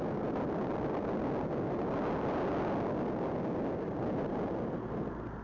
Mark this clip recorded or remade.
recorded